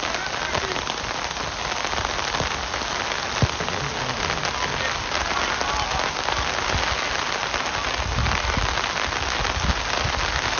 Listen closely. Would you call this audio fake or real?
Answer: real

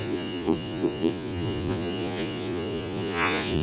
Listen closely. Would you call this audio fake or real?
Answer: fake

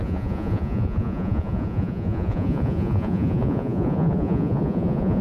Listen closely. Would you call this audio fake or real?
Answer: fake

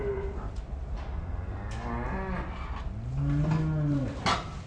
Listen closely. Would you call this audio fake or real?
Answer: real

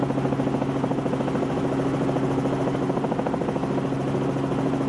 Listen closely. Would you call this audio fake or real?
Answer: real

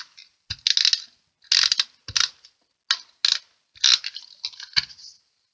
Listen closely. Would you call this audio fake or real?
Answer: real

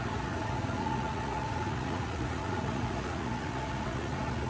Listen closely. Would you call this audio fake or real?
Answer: fake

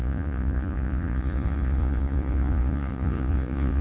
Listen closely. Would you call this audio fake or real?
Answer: fake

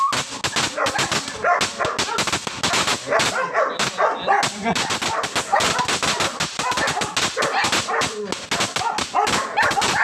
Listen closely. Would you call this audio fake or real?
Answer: real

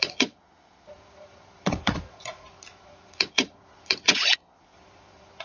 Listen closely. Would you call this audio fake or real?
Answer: fake